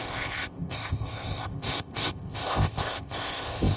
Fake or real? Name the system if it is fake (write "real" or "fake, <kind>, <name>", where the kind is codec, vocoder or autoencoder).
fake, codec, ZipCodec